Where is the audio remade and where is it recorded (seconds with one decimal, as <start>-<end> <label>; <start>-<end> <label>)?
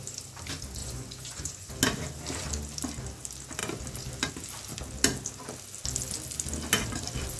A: 0.0-0.8 recorded; 0.8-1.7 remade; 1.7-7.4 recorded